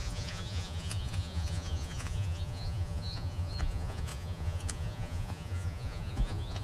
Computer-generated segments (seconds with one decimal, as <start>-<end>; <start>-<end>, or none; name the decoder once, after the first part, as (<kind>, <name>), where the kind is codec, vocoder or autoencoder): 0.0-6.6 (vocoder, Vocos)